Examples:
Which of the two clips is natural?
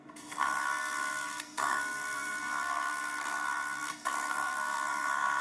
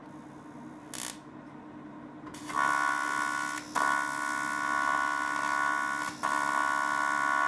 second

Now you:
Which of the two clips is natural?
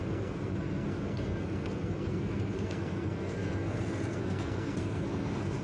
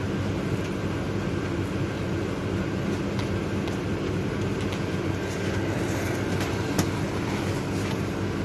second